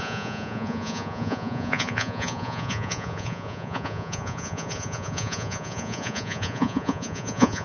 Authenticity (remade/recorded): remade